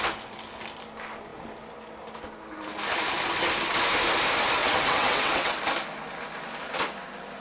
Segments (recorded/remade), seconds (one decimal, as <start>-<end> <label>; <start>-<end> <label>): 0.0-4.6 recorded; 4.6-5.6 remade; 5.6-7.4 recorded